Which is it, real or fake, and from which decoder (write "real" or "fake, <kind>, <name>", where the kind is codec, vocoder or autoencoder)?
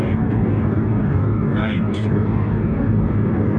fake, codec, DAC